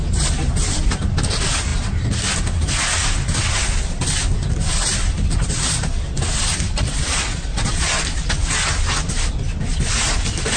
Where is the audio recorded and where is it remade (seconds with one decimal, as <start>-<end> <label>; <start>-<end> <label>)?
0.0-7.5 recorded; 7.5-8.0 remade; 8.0-10.6 recorded